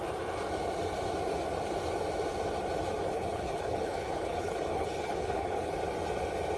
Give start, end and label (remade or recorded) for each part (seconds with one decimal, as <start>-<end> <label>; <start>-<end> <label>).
0.0-3.0 recorded; 3.0-5.7 remade; 5.7-6.6 recorded